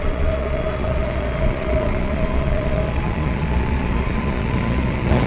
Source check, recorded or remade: remade